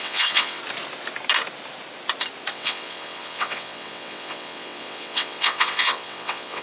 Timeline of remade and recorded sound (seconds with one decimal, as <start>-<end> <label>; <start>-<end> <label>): 0.0-0.6 remade; 0.6-2.5 recorded; 2.5-6.6 remade